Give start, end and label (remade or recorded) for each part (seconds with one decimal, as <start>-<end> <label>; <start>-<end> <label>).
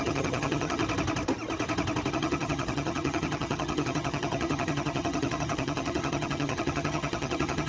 0.0-0.8 remade; 0.8-2.1 recorded; 2.1-7.7 remade